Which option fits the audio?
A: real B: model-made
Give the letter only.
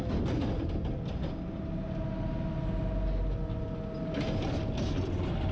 A